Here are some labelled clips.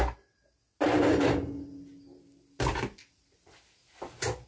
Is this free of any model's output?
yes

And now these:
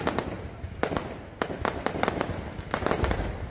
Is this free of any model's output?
yes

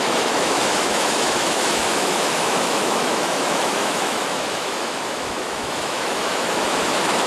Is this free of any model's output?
no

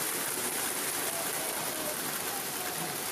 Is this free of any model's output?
yes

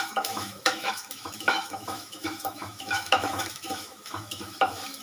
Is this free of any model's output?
no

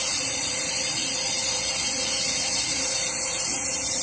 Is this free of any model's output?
yes